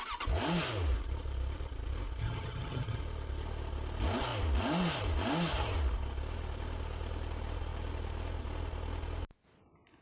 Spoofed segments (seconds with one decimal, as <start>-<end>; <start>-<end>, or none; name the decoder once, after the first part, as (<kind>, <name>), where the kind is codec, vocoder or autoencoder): 2.2-3.0 (vocoder, HiFi-GAN)